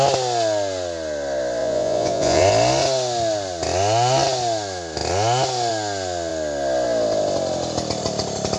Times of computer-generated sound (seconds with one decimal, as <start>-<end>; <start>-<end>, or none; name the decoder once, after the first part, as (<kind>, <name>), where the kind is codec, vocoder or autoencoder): 1.6-2.4 (vocoder, Vocos)